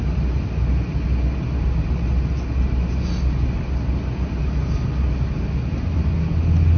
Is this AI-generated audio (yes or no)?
no